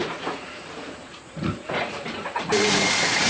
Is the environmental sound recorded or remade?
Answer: remade